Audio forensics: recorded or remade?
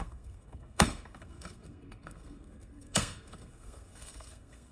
remade